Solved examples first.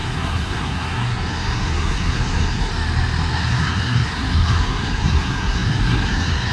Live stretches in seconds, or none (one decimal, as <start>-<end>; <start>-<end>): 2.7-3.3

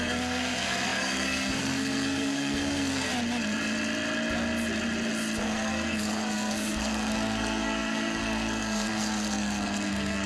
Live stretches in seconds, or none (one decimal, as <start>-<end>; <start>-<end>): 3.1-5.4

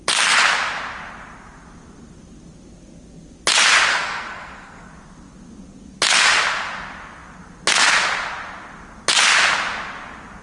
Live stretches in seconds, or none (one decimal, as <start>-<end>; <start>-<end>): 0.0-3.9; 4.9-10.4

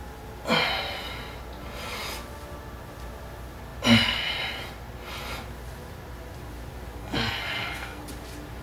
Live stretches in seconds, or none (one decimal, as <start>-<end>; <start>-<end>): 0.0-7.0; 8.0-8.6

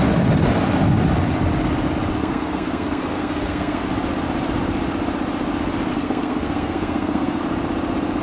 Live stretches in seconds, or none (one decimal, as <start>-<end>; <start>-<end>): 0.0-2.2; 3.8-5.9; 7.4-8.2

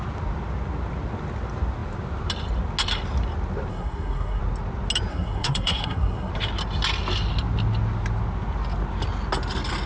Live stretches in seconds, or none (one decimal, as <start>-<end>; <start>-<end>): 0.0-3.7; 4.4-5.1; 6.3-9.9

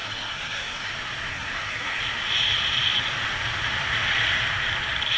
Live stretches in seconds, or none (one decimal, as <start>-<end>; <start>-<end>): 0.9-1.3; 2.0-5.2